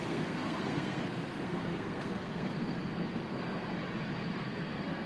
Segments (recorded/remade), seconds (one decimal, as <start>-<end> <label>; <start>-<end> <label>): 0.0-3.7 remade; 3.7-4.3 recorded; 4.3-5.1 remade